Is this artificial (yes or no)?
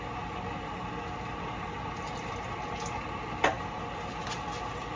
no